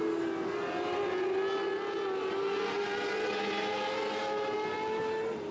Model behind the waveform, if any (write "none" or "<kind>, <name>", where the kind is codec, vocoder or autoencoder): none